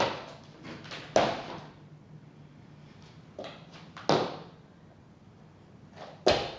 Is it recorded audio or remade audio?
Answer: recorded